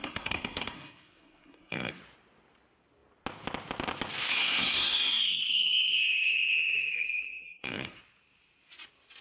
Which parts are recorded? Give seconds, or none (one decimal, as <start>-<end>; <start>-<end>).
2.0-4.3; 8.0-9.2

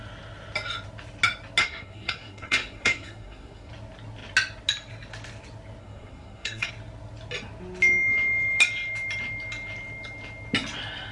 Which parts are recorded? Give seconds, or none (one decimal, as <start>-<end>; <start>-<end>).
0.0-1.6; 3.7-5.8; 6.7-11.1